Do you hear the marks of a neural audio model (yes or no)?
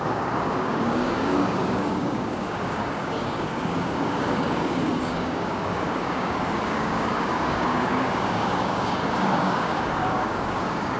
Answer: yes